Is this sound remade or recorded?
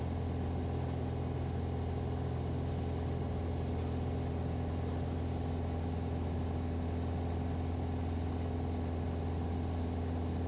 recorded